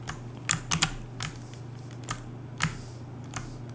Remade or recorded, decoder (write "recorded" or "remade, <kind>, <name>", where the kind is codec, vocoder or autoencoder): recorded